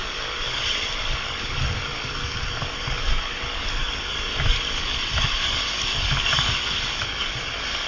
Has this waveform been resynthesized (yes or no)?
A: yes